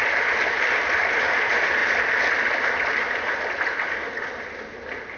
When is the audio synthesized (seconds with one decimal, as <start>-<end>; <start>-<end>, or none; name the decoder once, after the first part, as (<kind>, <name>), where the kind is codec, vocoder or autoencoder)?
none